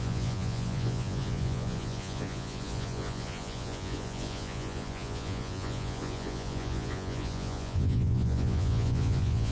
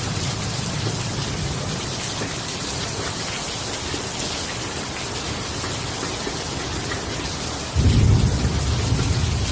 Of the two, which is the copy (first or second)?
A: first